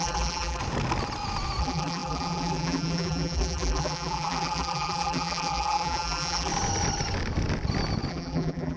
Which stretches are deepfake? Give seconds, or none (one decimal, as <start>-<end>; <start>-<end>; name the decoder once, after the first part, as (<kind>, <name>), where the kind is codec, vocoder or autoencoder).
0.0-0.6 (vocoder, BigVGAN v2); 1.6-6.5; 8.1-8.8